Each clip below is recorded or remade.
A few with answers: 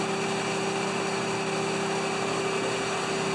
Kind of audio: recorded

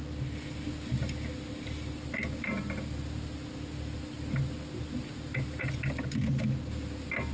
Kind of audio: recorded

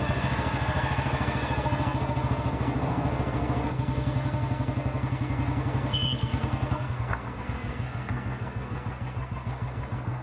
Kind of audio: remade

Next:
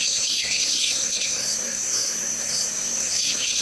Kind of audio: remade